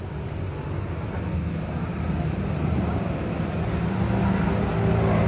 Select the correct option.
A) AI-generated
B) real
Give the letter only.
B